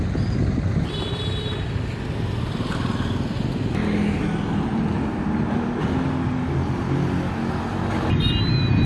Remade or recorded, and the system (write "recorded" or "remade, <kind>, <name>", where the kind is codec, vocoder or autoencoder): recorded